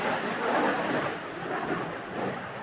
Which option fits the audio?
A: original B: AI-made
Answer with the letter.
A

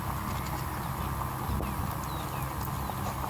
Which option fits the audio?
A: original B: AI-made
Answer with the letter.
A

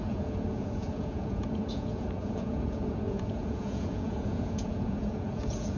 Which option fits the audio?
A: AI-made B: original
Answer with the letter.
A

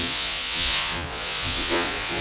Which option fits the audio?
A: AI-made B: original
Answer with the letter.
A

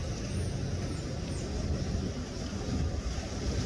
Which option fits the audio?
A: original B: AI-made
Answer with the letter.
A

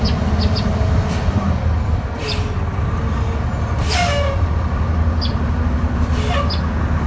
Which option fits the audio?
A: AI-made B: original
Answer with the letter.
B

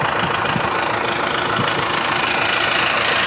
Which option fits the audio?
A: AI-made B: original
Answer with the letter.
B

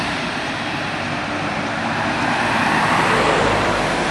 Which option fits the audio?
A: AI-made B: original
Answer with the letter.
B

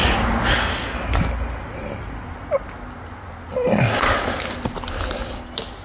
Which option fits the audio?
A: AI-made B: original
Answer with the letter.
B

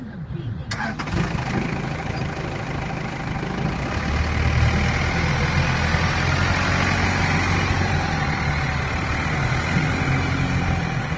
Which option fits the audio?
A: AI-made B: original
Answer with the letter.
B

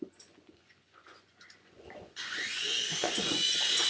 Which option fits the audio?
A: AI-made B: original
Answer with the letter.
A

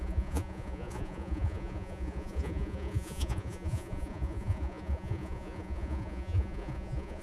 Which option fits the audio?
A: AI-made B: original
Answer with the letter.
A